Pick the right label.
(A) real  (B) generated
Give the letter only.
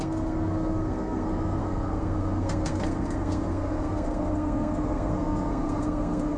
B